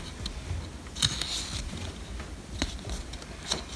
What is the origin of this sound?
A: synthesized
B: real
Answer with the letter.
B